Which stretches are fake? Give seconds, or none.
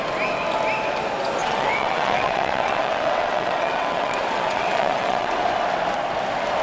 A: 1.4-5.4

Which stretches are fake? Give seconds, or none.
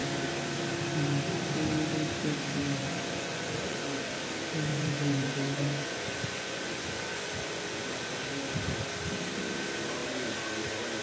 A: 2.8-4.1; 4.7-8.2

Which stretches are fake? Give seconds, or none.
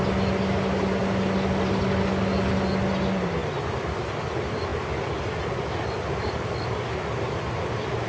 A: none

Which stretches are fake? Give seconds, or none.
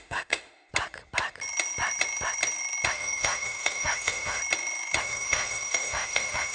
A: 0.0-0.7; 2.9-4.4; 5.0-6.5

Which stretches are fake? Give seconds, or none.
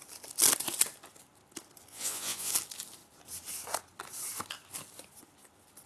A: 1.9-2.5